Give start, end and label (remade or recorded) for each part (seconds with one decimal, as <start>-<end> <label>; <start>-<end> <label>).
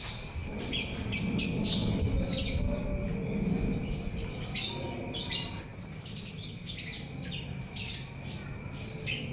0.0-9.3 recorded